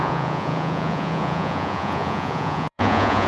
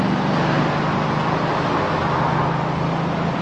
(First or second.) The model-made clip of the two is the first